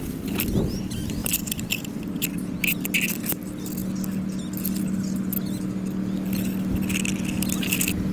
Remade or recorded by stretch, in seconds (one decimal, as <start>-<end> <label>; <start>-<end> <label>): 0.0-1.2 recorded; 1.2-1.8 remade; 1.8-8.1 recorded